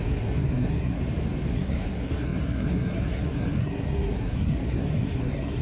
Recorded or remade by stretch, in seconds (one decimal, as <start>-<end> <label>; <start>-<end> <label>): 0.0-1.0 remade; 1.0-1.5 recorded; 1.5-5.6 remade